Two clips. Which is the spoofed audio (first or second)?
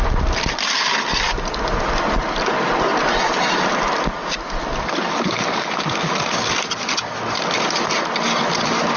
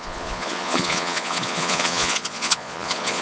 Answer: second